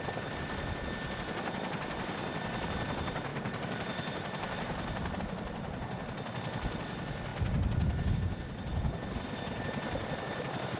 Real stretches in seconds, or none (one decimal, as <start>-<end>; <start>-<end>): 0.0-3.3; 5.2-10.8